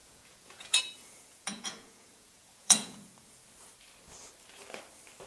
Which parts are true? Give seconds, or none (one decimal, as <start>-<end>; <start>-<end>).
3.4-5.3